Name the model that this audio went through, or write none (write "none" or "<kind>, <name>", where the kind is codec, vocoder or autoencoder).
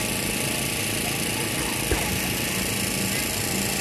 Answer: none